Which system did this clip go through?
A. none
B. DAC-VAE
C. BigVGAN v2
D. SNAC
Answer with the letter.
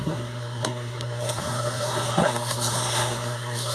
D